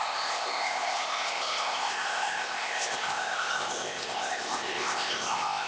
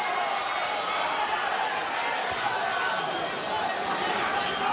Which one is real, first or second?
second